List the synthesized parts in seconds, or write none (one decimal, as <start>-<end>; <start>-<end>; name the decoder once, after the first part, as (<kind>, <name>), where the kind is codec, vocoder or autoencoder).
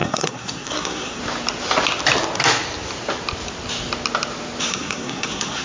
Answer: 0.0-1.2 (codec, SNAC); 4.6-5.6